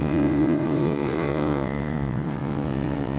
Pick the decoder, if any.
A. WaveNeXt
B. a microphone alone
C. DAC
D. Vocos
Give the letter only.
A